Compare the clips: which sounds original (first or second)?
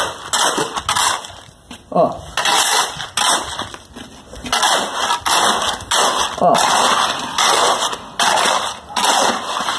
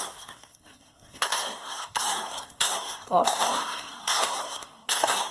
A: first